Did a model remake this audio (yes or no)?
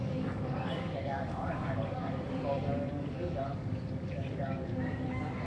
yes